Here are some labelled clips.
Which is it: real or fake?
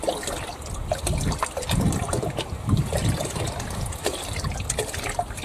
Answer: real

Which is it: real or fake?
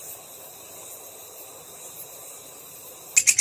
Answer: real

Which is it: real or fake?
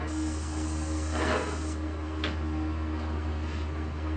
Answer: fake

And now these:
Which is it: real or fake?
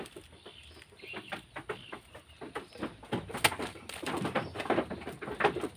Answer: real